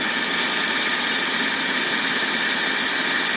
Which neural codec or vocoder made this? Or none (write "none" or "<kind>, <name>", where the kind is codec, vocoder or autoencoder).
none